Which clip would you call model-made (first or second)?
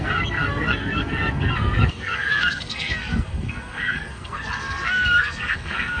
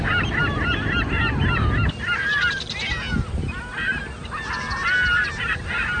first